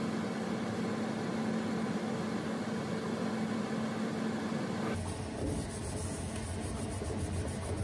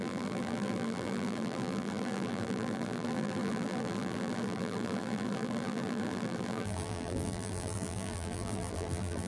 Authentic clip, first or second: first